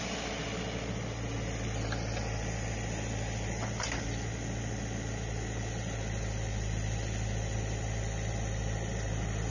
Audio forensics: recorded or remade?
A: recorded